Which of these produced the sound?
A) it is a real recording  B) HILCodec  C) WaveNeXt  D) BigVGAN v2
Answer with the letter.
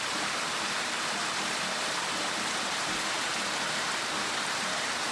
D